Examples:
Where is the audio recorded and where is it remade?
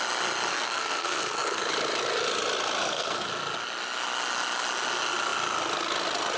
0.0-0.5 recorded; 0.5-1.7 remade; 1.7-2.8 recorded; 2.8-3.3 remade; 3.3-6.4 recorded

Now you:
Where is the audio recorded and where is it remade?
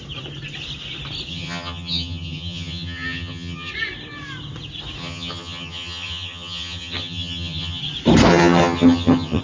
0.0-1.3 recorded; 1.3-3.7 remade; 3.7-5.0 recorded; 5.0-7.8 remade; 7.8-8.3 recorded; 8.3-9.4 remade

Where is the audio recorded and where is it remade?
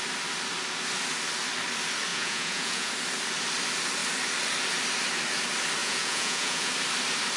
0.0-2.1 recorded; 2.1-2.9 remade; 2.9-5.8 recorded; 5.8-6.7 remade; 6.7-7.4 recorded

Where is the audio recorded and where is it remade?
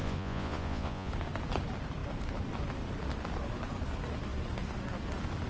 0.0-1.1 remade; 1.1-5.5 recorded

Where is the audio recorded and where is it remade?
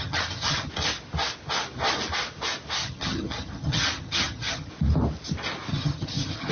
0.0-0.7 remade; 0.7-2.8 recorded; 2.8-4.7 remade; 4.7-5.7 recorded; 5.7-6.5 remade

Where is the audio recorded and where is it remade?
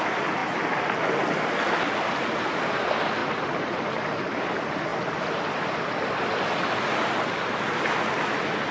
0.0-3.2 recorded; 3.2-4.0 remade; 4.0-8.7 recorded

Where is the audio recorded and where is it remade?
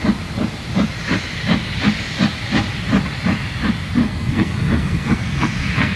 0.0-4.0 recorded; 4.0-6.0 remade